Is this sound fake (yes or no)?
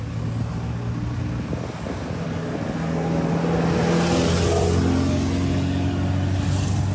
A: no